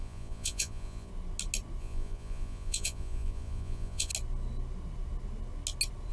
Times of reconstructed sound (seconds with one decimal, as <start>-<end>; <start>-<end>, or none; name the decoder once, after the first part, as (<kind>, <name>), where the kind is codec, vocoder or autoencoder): 0.0-1.1 (vocoder, Vocos); 1.8-4.1